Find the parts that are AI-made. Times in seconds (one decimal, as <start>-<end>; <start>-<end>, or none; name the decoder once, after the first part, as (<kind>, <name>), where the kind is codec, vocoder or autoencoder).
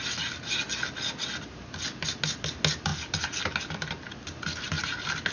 none